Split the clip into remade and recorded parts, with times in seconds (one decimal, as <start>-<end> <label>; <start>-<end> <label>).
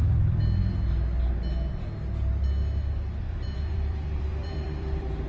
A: 0.0-0.6 remade; 0.6-3.2 recorded; 3.2-5.3 remade